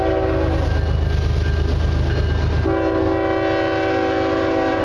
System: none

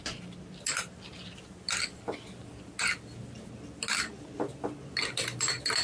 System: none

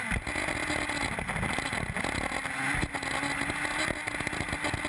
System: none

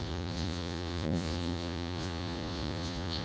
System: vocoder, Vocos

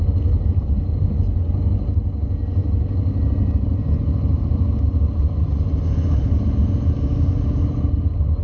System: none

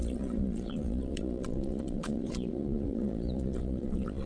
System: vocoder, Vocos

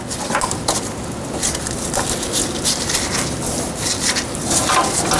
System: none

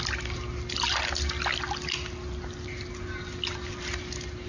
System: none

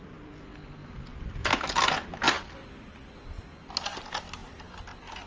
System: none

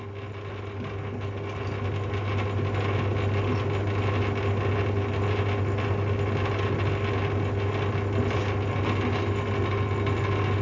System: none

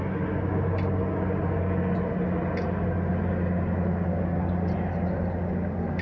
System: none